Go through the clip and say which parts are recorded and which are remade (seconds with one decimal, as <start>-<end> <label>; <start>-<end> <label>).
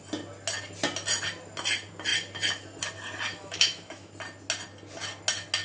0.0-3.3 recorded; 3.3-4.1 remade; 4.1-5.6 recorded